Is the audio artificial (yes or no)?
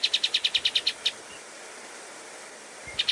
no